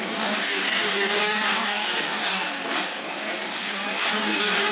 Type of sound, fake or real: fake